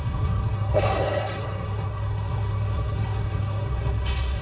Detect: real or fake fake